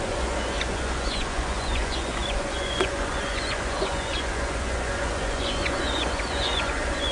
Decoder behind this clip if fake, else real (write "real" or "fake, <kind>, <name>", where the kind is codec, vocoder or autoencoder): fake, vocoder, Vocos